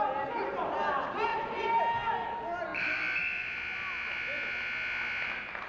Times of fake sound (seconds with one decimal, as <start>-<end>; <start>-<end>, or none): none